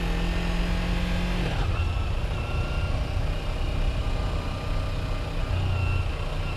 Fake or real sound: real